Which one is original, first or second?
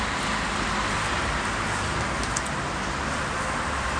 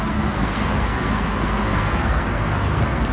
first